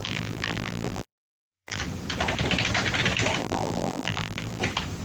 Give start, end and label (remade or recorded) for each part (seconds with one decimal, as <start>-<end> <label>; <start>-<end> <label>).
0.0-1.8 remade; 1.8-3.4 recorded; 3.4-4.6 remade; 4.6-5.0 recorded